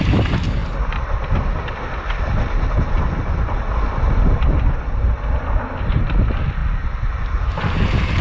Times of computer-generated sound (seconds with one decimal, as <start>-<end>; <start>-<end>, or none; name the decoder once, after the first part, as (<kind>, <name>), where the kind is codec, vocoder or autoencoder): 0.6-2.2 (vocoder, BigVGAN v2)